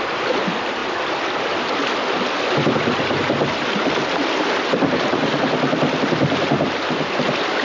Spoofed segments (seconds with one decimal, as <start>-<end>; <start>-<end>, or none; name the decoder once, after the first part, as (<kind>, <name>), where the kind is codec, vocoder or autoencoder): none